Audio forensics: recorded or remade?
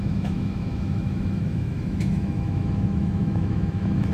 remade